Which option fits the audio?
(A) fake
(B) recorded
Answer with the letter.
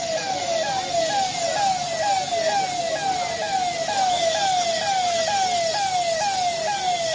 B